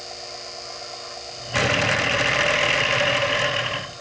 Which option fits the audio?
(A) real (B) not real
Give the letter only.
A